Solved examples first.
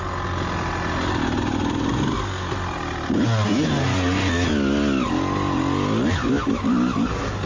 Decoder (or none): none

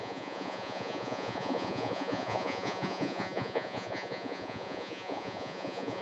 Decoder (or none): vocoder, Vocos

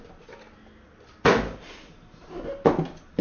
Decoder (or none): none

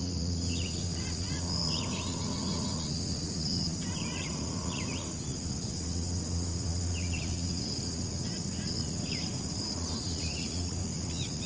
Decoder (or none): vocoder, Vocos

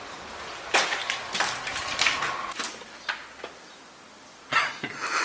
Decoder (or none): none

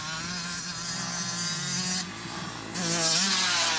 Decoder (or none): none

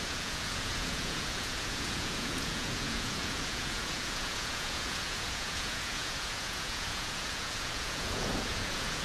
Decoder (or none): vocoder, Vocos